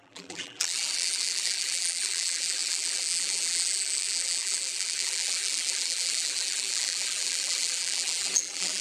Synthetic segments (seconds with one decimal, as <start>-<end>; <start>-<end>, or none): 0.0-8.8